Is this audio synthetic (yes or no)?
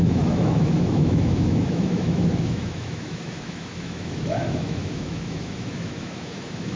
yes